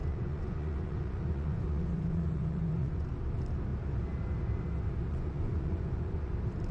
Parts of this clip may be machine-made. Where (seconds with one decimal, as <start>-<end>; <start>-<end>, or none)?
0.0-3.1; 5.1-6.3